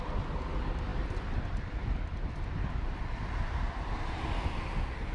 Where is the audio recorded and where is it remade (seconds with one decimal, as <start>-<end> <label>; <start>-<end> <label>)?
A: 0.0-5.1 recorded